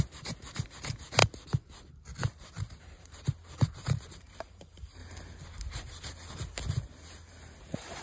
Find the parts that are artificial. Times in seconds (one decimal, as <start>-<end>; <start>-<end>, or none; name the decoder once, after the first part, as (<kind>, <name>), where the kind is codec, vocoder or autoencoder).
0.0-1.2 (vocoder, BigVGAN v2); 2.8-5.0; 6.7-8.0